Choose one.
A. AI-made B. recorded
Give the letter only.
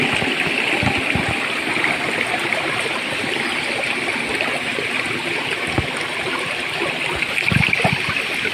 B